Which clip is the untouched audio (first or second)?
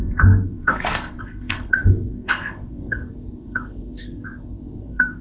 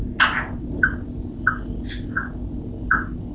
second